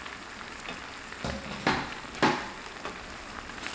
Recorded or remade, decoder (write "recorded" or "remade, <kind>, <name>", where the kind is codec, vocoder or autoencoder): recorded